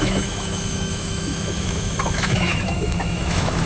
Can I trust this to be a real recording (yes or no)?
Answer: no